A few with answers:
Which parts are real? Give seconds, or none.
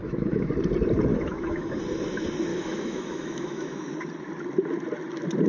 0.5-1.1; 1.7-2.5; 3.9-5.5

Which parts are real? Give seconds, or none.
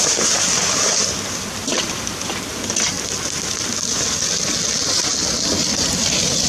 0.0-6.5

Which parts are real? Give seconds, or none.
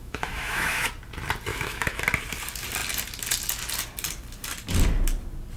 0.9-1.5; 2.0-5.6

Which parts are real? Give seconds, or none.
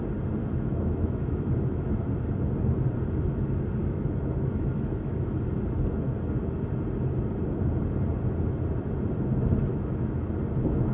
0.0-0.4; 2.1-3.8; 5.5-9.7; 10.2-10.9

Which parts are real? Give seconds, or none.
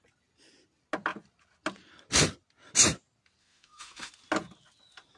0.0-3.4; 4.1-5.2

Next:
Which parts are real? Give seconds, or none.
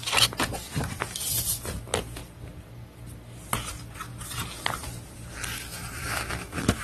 0.0-6.0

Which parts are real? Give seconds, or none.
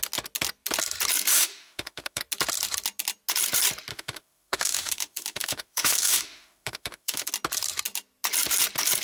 0.0-1.3; 2.2-3.9; 7.3-9.0